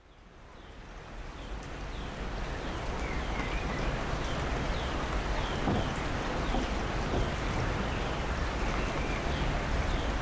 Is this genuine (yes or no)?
yes